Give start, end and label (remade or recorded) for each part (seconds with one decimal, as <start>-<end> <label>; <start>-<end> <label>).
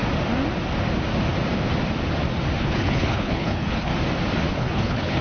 0.0-2.6 recorded; 2.6-3.9 remade; 3.9-4.5 recorded; 4.5-5.2 remade